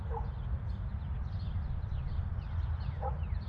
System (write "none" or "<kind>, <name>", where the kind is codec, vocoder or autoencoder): none